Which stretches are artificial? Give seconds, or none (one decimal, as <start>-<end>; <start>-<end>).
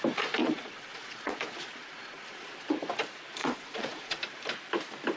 0.4-2.8; 3.4-4.2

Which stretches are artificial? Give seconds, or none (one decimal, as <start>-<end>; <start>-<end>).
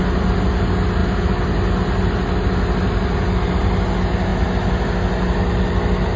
none